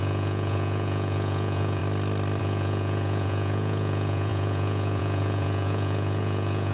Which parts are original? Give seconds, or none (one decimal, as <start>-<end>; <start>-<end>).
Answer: 1.8-2.4